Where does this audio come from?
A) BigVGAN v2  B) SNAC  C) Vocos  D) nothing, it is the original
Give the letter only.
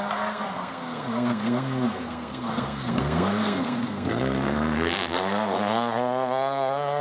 B